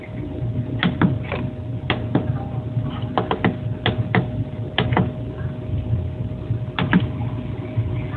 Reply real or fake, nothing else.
real